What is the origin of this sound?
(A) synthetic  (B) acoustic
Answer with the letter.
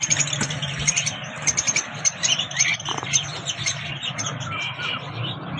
A